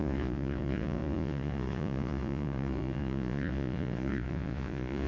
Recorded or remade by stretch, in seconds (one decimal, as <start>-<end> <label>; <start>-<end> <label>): 0.0-5.1 remade